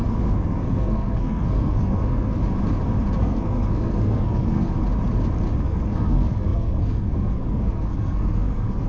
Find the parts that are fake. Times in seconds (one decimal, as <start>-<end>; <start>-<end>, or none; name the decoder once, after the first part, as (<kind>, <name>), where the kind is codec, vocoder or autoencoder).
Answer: 0.0-2.4 (codec, SNAC); 3.2-4.8; 5.6-8.9

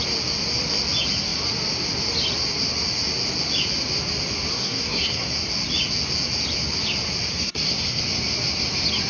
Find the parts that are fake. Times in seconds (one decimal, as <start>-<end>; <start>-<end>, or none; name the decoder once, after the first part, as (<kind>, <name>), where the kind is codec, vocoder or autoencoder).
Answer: 4.5-5.3 (codec, SNAC); 7.3-8.0

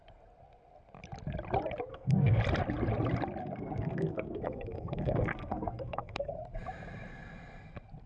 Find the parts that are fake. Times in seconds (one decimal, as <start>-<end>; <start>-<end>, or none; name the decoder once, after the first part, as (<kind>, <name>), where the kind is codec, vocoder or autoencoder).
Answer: 1.9-2.4 (codec, SNAC); 3.4-6.3

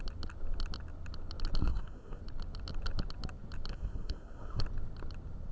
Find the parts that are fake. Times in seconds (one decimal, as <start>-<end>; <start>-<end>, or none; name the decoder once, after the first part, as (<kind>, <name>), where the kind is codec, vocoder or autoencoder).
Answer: 1.6-2.2 (codec, SNAC); 3.7-4.6

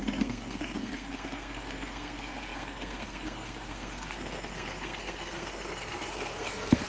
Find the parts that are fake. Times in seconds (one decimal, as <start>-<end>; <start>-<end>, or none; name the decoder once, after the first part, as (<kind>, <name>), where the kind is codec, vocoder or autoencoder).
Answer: 0.0-6.9 (codec, SNAC)